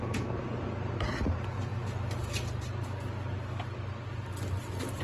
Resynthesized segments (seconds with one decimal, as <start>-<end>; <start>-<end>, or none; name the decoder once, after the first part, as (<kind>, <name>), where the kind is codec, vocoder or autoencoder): none